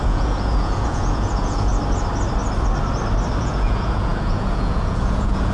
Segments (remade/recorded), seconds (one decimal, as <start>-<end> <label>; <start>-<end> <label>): 0.0-1.7 remade; 1.7-3.4 recorded; 3.4-5.5 remade